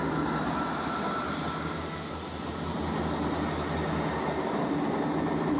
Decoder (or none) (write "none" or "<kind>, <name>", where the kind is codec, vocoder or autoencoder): none